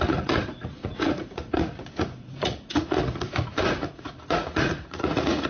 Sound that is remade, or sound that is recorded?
remade